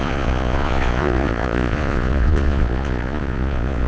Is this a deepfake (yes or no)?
yes